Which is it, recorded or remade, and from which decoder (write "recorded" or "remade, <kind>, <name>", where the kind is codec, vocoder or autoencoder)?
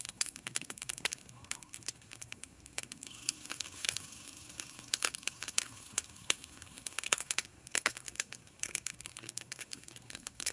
remade, codec, SNAC